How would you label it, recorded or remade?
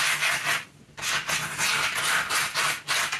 recorded